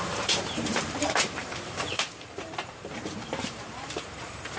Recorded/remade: remade